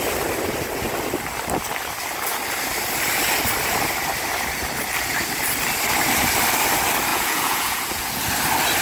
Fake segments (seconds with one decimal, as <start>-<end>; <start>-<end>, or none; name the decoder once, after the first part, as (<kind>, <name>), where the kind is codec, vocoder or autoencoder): 7.1-8.2 (vocoder, Vocos)